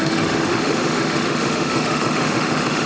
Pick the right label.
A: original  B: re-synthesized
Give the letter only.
B